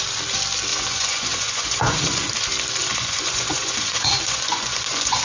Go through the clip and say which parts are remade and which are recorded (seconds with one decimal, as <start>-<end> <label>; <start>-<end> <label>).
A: 0.0-0.7 recorded; 0.7-2.3 remade; 2.3-2.8 recorded; 2.8-5.2 remade

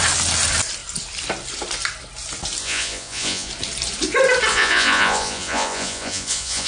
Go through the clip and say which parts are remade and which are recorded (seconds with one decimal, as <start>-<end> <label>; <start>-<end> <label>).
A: 0.0-2.6 recorded; 2.6-3.5 remade; 3.5-4.5 recorded; 4.5-6.7 remade

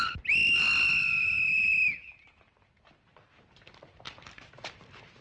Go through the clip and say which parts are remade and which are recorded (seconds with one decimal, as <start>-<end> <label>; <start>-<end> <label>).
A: 0.0-5.2 remade

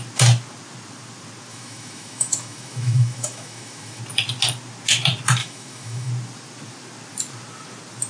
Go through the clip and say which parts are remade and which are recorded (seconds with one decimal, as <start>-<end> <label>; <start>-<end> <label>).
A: 0.0-1.5 recorded; 1.5-4.0 remade; 4.0-5.4 recorded; 5.4-6.1 remade; 6.1-8.1 recorded

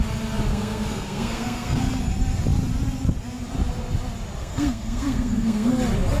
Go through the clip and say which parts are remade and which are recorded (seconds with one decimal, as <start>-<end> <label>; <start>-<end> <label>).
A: 0.0-0.5 recorded; 0.5-1.9 remade; 1.9-4.4 recorded; 4.4-5.7 remade; 5.7-6.2 recorded